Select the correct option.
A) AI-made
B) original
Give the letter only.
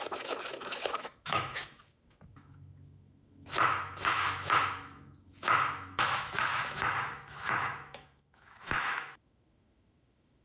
A